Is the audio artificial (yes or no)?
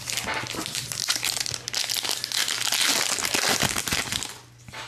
no